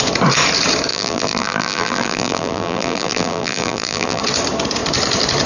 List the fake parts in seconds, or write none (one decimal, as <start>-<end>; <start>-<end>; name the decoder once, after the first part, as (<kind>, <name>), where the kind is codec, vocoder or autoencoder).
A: 0.9-4.2 (vocoder, BigVGAN v2)